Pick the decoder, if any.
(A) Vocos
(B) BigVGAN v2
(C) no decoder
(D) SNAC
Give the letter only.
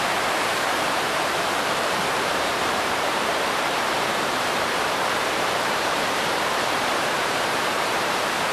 B